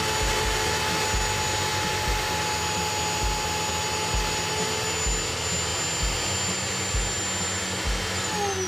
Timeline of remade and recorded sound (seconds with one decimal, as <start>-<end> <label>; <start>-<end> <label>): 0.0-8.7 recorded